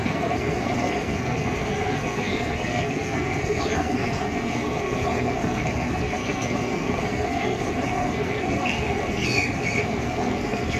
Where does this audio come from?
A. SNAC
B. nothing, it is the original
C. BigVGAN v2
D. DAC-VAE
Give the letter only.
A